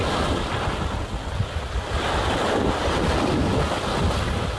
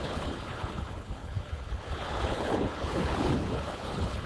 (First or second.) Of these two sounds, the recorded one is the first